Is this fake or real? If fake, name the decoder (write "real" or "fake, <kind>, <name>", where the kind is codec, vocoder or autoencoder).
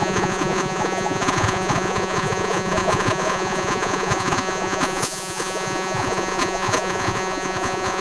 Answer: fake, vocoder, Vocos